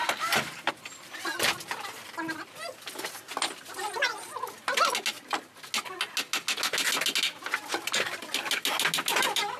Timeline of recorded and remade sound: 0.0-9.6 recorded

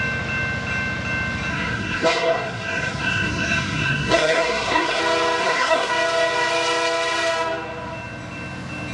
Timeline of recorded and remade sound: 0.0-1.5 recorded; 1.5-5.0 remade; 5.0-5.4 recorded; 5.4-5.9 remade; 5.9-8.9 recorded

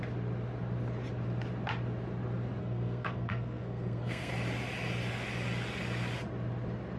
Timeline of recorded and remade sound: 0.0-2.6 recorded; 2.6-4.3 remade; 4.3-7.0 recorded

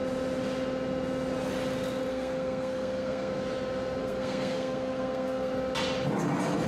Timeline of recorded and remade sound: 0.0-2.1 recorded; 2.1-3.3 remade; 3.3-4.0 recorded; 4.0-5.5 remade; 5.5-6.7 recorded

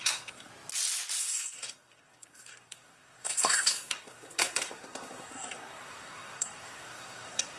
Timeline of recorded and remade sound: 0.0-0.5 remade; 0.5-1.2 recorded; 1.2-7.6 remade